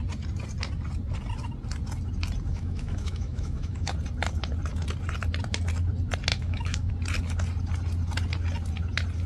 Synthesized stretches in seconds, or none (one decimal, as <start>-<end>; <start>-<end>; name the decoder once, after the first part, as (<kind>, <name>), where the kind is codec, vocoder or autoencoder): 2.5-3.9 (autoencoder, DAC-VAE); 6.3-6.9